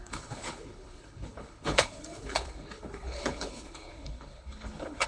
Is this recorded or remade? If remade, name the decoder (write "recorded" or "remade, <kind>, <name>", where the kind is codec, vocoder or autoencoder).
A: remade, codec, HILCodec